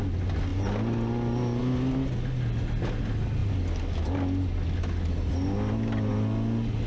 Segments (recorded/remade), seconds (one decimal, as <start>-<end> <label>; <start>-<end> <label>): 0.0-6.9 recorded